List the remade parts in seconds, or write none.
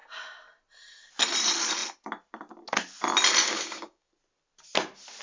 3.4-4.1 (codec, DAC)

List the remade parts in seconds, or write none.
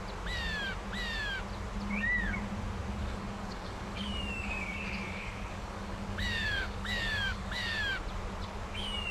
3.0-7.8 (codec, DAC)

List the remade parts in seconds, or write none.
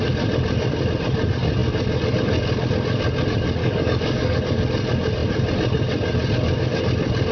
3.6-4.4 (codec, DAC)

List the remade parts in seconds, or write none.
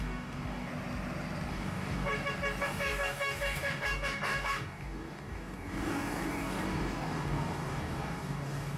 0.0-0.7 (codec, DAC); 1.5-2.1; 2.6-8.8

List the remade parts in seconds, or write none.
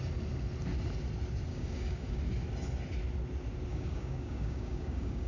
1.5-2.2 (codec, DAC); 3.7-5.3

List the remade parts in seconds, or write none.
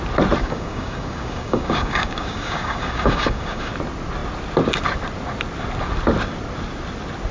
0.4-3.7 (codec, DAC)